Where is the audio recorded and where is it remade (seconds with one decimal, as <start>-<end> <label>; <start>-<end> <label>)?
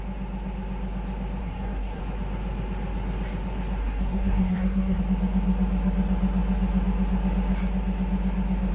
0.0-1.4 recorded; 1.4-2.0 remade; 2.0-3.8 recorded; 3.8-5.0 remade; 5.0-8.7 recorded